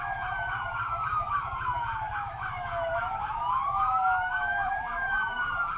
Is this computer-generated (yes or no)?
yes